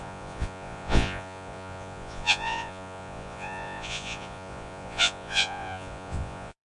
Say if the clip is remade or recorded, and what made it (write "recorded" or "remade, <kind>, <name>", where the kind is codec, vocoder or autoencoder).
remade, vocoder, Vocos